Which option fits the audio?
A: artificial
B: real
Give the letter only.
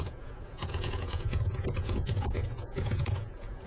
A